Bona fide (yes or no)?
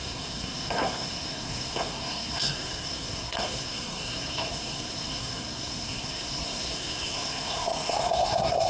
no